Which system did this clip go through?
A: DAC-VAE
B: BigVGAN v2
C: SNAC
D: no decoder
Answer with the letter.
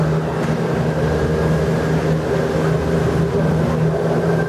D